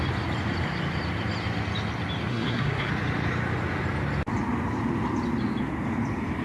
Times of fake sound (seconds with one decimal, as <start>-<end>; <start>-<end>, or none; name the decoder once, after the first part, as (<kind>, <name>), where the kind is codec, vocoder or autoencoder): 2.3-2.9 (codec, SNAC)